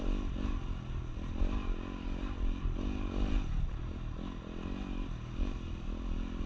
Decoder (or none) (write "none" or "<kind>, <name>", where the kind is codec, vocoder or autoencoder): none